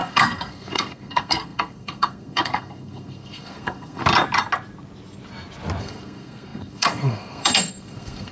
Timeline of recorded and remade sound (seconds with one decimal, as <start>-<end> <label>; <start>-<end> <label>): 0.0-4.0 remade; 4.0-5.8 recorded; 5.8-8.3 remade